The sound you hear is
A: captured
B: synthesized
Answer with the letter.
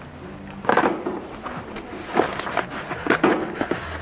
A